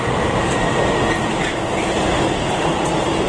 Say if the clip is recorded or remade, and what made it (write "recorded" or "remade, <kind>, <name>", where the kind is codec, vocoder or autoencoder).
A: recorded